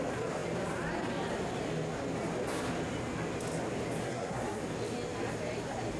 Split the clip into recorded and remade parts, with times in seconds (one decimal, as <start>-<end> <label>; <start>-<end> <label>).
0.0-4.0 recorded; 4.0-4.6 remade; 4.6-6.0 recorded